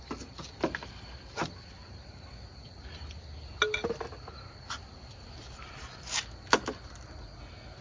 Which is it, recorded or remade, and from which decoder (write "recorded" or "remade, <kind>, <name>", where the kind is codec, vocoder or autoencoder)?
recorded